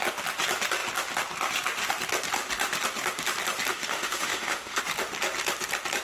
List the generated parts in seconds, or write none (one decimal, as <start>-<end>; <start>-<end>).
3.7-4.8